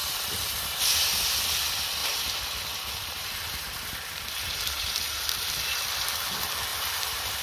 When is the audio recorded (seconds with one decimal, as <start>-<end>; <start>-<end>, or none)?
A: 0.8-2.0; 5.5-6.7